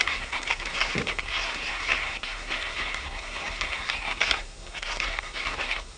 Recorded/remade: remade